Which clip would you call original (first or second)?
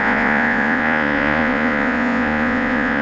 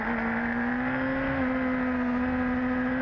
second